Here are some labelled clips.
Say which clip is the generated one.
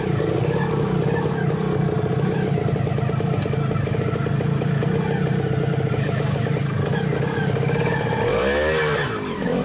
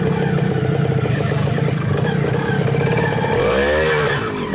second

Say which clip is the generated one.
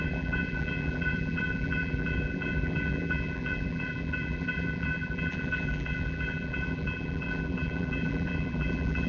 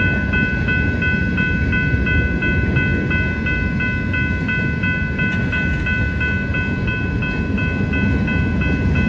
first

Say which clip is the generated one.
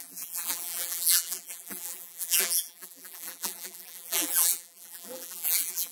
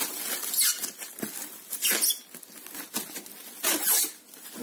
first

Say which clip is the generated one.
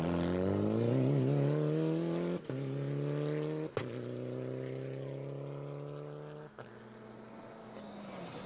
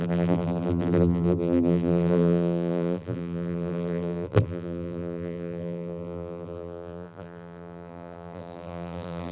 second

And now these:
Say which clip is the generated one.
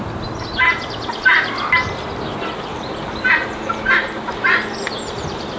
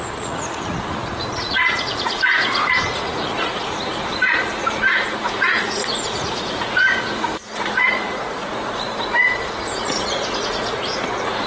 second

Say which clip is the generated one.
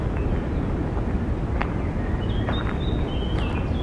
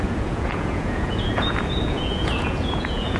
second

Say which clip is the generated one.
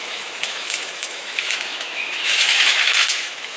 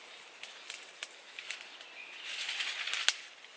first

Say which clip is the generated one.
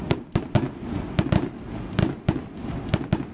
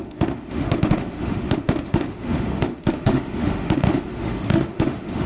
second